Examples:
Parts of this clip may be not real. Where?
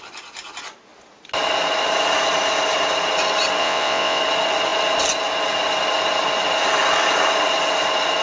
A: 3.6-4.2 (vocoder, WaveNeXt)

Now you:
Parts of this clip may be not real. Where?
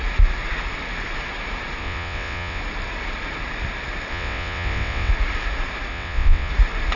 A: 1.8-2.6 (vocoder, WaveNeXt); 4.1-5.1; 5.9-6.5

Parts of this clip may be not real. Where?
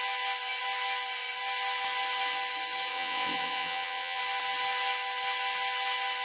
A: 2.9-4.2 (vocoder, WaveNeXt)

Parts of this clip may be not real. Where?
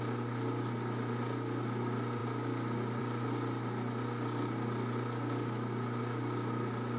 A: none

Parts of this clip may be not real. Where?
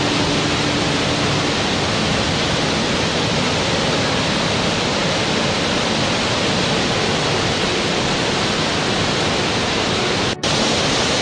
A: none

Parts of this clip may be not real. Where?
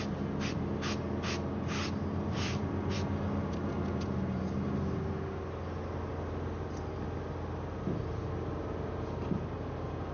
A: none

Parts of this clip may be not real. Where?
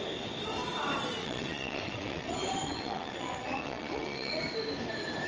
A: 1.2-4.4 (vocoder, WaveNeXt)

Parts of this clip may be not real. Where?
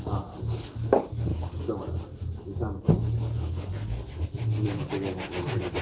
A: none